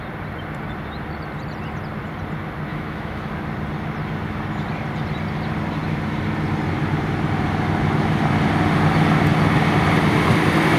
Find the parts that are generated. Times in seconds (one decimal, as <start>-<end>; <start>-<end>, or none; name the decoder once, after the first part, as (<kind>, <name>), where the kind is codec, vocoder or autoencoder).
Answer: 2.7-3.3 (autoencoder, DAC-VAE)